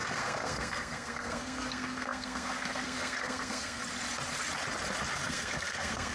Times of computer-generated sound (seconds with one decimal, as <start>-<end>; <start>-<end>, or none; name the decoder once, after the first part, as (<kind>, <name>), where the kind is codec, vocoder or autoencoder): 0.0-3.8 (codec, SNAC); 5.3-6.1

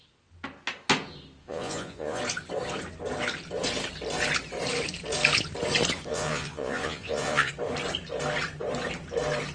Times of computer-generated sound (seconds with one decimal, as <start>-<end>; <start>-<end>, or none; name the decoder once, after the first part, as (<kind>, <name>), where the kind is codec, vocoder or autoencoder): 1.4-2.2 (vocoder, Vocos); 6.1-7.5

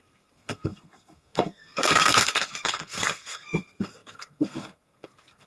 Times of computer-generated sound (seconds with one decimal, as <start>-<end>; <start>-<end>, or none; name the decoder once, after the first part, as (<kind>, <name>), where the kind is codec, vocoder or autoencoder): 0.0-5.5 (codec, SNAC)

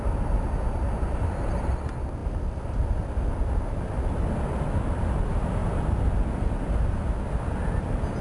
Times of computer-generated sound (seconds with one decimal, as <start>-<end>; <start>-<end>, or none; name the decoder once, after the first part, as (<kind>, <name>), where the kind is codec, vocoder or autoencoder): none